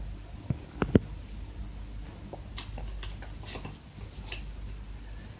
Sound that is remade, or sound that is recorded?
recorded